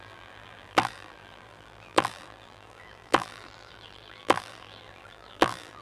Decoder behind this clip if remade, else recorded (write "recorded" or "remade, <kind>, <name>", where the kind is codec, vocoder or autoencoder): remade, vocoder, BigVGAN v2